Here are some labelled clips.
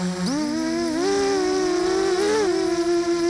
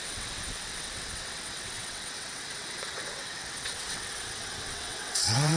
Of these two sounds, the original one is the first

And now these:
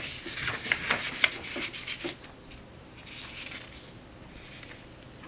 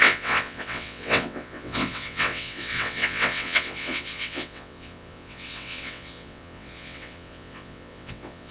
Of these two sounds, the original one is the first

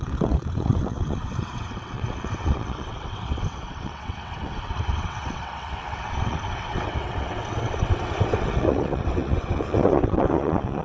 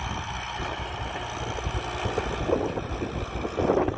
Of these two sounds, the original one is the second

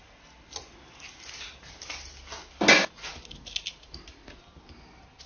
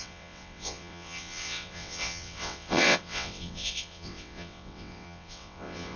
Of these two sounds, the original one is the first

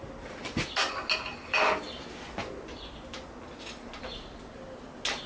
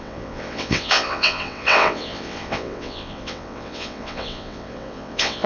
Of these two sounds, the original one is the first